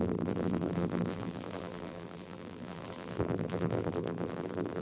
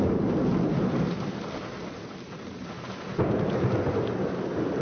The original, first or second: second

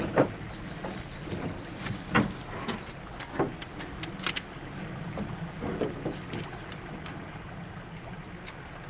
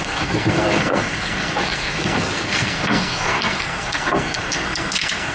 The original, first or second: first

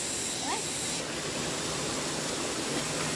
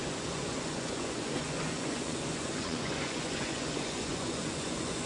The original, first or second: first